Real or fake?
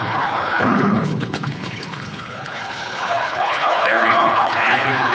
fake